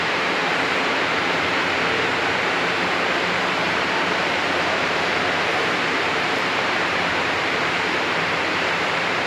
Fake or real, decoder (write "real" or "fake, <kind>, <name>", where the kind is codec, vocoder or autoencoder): fake, vocoder, BigVGAN v2